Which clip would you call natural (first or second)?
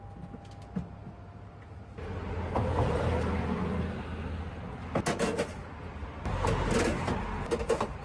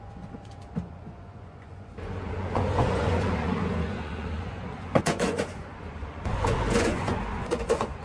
first